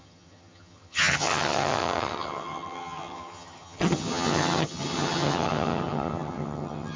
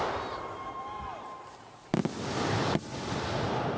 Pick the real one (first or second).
second